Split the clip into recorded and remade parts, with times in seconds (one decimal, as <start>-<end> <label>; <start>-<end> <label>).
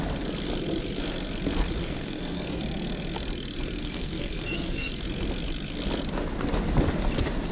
0.0-1.8 recorded; 1.8-2.6 remade; 2.6-3.8 recorded; 3.8-4.9 remade; 4.9-7.5 recorded